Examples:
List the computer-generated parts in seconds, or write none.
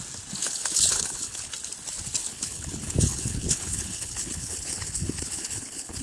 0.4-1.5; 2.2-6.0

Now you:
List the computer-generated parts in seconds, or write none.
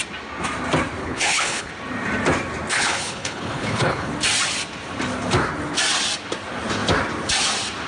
1.0-1.7; 2.7-4.1